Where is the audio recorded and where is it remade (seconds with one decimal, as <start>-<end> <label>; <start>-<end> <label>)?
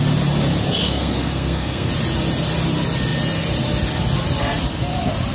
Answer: 0.0-0.8 recorded; 0.8-1.9 remade; 1.9-5.3 recorded